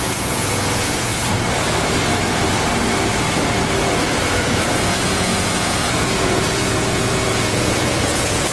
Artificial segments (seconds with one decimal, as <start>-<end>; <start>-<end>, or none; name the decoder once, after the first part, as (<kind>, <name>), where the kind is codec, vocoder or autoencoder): 0.0-1.1 (vocoder, Vocos); 4.4-8.5